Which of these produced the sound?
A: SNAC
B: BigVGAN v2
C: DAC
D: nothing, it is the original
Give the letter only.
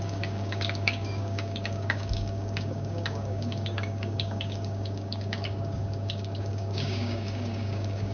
C